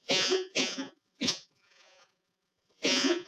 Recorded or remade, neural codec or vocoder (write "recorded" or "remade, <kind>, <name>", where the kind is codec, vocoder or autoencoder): remade, vocoder, Vocos